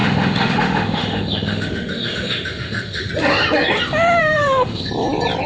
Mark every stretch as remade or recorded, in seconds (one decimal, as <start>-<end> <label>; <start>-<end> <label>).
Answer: 0.0-3.1 remade; 3.1-4.2 recorded; 4.2-4.9 remade; 4.9-5.5 recorded